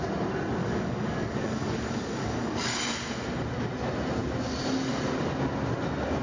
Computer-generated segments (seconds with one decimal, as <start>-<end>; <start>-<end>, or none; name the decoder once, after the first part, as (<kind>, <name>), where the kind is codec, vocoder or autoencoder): 0.6-2.8 (codec, DAC)